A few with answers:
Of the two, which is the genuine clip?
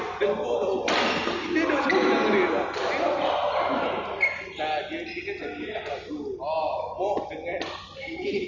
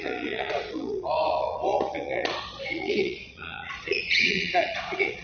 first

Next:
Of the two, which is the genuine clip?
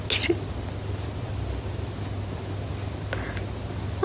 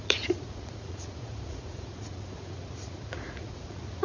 first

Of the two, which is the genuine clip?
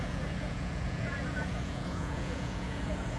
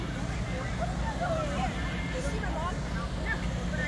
second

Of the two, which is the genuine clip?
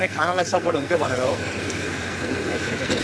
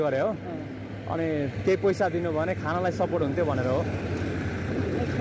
second